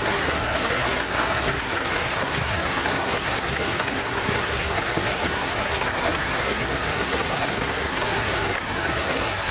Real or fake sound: fake